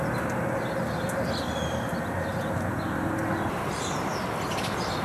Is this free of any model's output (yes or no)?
yes